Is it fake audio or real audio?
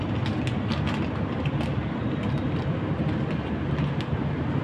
real